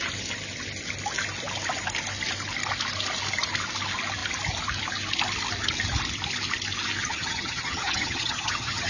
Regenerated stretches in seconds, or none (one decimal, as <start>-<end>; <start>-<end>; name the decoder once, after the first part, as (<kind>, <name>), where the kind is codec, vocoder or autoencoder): 7.0-8.9 (vocoder, HiFi-GAN)